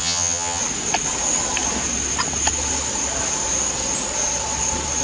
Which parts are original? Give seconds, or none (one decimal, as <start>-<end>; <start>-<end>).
0.6-5.0

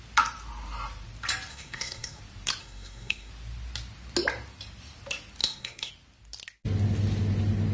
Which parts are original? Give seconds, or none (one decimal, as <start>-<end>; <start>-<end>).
0.0-1.5; 2.2-2.6; 3.3-5.4; 5.9-7.7

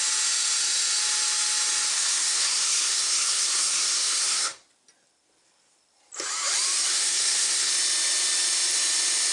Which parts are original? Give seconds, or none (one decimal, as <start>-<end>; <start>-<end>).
0.0-1.9; 4.6-6.9; 7.7-9.3